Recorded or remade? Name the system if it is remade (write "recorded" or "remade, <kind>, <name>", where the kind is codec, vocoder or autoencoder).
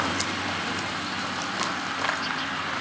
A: recorded